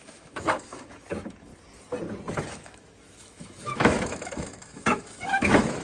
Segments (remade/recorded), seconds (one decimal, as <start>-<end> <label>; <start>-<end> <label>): 0.0-1.5 remade; 1.5-2.4 recorded; 2.4-5.8 remade